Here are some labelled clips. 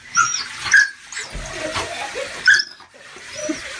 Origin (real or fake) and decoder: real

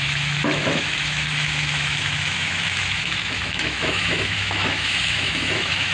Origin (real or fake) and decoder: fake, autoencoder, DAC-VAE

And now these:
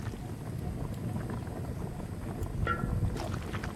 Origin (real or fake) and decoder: real